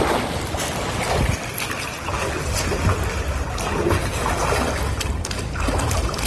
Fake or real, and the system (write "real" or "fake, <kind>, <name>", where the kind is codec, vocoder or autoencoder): real